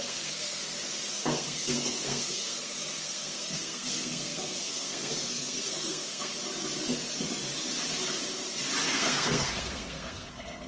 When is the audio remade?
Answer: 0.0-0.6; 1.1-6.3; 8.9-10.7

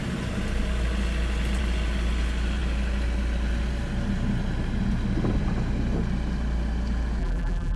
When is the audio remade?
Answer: 7.2-7.8

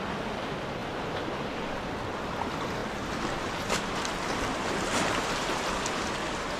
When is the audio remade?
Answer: none

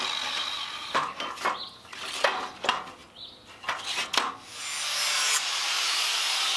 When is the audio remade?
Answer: none

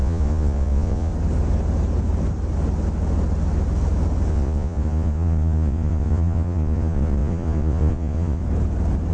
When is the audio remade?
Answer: 0.0-1.1; 4.3-8.4

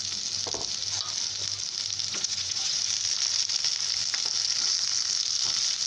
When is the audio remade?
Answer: 2.1-2.8

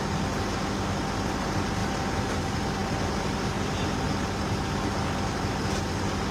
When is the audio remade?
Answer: none